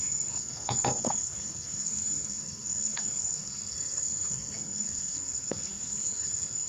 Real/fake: fake